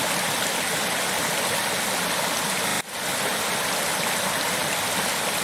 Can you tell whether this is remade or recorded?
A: recorded